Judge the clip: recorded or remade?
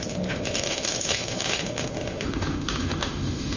remade